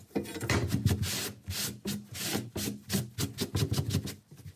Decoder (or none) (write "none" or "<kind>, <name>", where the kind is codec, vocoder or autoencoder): none